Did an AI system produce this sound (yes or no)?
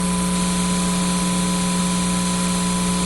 no